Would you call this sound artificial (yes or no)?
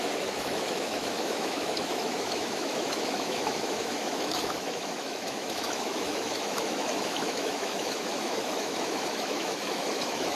yes